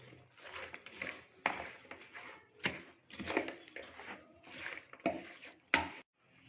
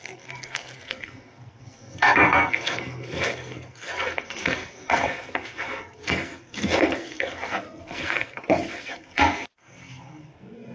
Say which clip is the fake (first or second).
second